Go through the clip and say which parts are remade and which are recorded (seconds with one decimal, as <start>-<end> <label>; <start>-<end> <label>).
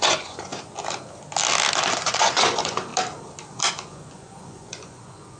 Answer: 0.0-0.5 remade; 0.5-1.9 recorded; 1.9-2.9 remade; 2.9-3.7 recorded; 3.7-5.4 remade